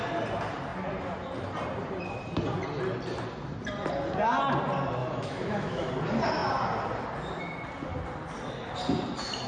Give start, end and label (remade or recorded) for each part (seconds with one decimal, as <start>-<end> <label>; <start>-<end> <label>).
0.0-5.0 recorded; 5.0-5.9 remade; 5.9-9.5 recorded